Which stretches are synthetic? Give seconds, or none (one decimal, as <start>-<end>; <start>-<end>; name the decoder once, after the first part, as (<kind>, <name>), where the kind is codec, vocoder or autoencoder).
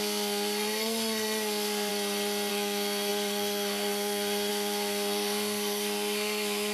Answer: 0.0-1.9 (codec, SNAC); 2.5-6.7